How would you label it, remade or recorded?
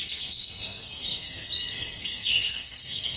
remade